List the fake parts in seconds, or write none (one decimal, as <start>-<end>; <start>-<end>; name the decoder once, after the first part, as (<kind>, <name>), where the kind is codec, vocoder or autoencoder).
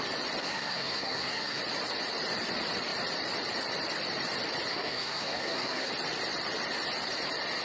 0.4-1.6 (codec, SNAC); 4.7-5.9